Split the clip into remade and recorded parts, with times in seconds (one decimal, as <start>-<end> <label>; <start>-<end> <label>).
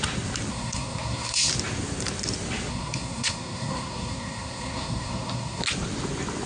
0.0-0.5 recorded; 0.5-1.5 remade; 1.5-2.7 recorded; 2.7-5.6 remade; 5.6-6.5 recorded